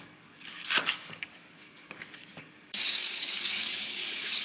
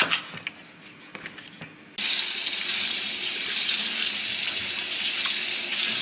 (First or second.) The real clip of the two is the second